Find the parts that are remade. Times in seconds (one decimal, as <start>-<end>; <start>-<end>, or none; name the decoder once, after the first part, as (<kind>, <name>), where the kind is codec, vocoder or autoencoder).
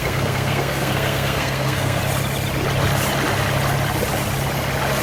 0.0-2.0 (codec, SNAC)